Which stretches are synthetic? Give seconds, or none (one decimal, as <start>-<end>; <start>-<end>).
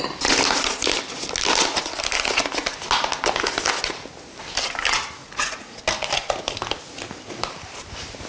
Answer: 5.2-5.8